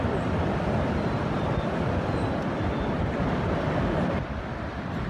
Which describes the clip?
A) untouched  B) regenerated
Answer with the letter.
A